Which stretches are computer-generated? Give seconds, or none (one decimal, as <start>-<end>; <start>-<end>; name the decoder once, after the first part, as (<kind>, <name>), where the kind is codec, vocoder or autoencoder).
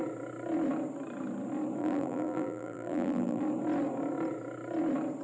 1.8-3.4 (vocoder, BigVGAN v2)